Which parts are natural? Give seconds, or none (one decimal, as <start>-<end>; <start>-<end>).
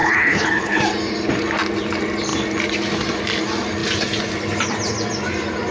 0.8-5.7